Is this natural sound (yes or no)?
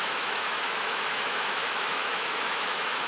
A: no